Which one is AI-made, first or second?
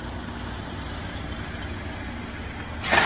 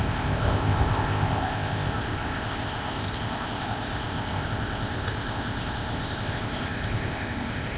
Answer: second